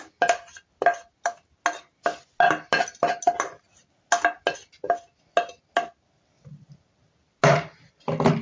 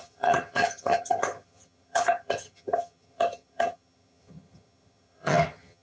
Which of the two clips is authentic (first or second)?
first